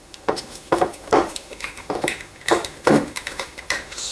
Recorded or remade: remade